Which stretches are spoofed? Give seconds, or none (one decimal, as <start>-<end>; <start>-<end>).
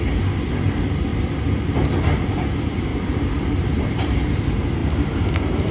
2.9-4.3; 4.8-5.7